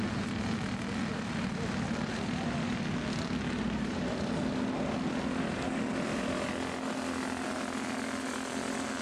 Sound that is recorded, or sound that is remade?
recorded